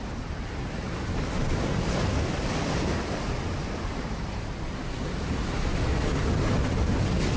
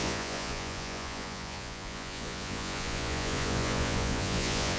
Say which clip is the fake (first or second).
second